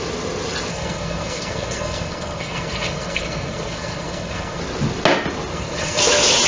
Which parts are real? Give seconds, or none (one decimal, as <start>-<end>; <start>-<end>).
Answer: 0.0-0.7; 4.6-5.5; 6.0-6.5